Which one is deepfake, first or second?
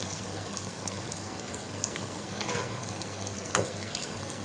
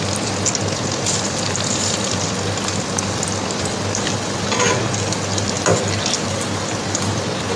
first